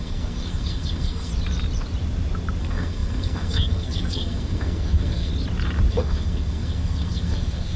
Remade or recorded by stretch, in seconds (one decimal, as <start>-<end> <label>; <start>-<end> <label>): 0.0-1.3 remade; 1.3-2.6 recorded; 2.6-5.3 remade; 5.3-5.9 recorded; 5.9-7.8 remade